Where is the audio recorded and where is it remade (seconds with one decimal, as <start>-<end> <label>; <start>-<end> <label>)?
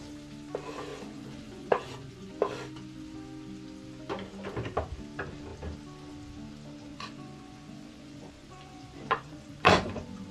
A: 0.0-0.9 recorded; 0.9-2.3 remade; 2.3-6.9 recorded; 6.9-10.3 remade